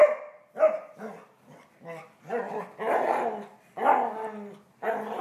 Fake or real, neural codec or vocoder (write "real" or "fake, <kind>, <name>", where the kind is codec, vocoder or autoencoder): real